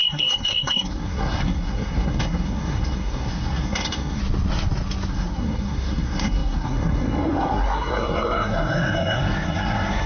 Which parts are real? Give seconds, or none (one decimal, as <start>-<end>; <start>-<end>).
4.2-5.1